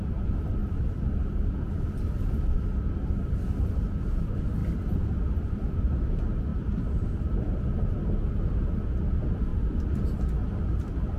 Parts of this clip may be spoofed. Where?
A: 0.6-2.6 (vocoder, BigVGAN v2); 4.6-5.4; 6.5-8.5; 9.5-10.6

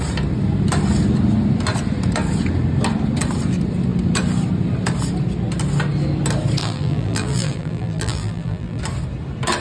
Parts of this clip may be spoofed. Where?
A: 6.6-8.8 (vocoder, BigVGAN v2)

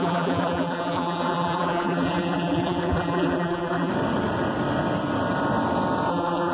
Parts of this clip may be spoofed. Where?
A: 0.0-3.9 (vocoder, BigVGAN v2); 6.1-6.5

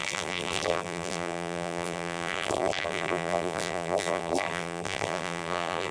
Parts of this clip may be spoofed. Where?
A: 0.0-5.9 (vocoder, BigVGAN v2)

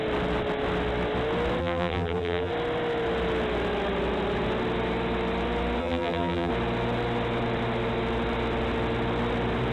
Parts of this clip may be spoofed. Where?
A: 1.6-2.5 (vocoder, BigVGAN v2); 5.8-6.5

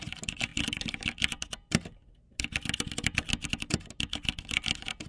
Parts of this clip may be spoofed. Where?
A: none

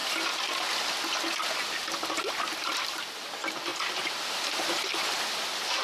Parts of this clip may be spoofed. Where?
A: 2.2-5.8 (vocoder, BigVGAN v2)